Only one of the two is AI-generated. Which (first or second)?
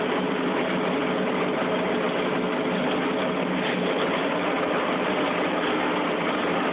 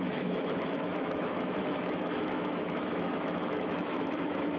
second